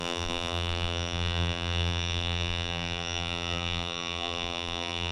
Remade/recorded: remade